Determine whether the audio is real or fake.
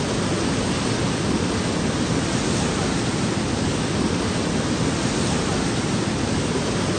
real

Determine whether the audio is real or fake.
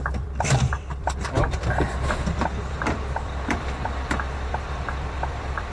fake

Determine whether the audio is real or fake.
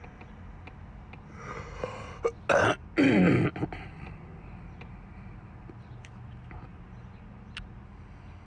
real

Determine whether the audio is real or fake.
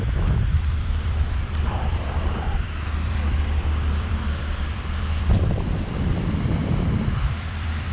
fake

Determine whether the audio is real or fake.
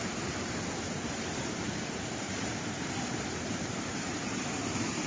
fake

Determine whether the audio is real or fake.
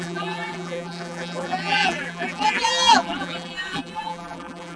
fake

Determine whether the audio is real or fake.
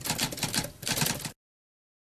real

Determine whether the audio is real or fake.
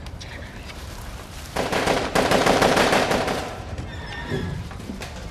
fake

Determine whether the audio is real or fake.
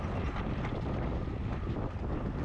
real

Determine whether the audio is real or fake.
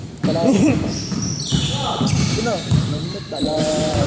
fake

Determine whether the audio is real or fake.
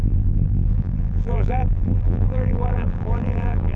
fake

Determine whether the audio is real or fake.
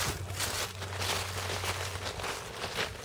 real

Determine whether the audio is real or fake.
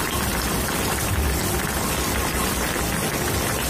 real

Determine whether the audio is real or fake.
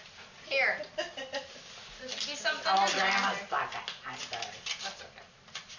real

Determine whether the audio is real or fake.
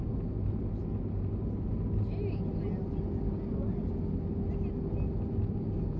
real